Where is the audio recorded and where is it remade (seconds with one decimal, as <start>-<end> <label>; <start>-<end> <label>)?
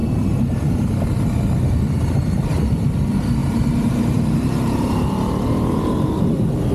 0.0-3.4 recorded; 3.4-6.7 remade